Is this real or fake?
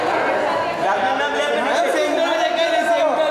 real